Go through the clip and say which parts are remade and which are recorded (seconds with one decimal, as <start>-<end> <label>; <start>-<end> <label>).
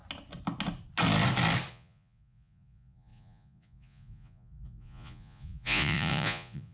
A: 0.0-1.7 recorded; 1.7-6.7 remade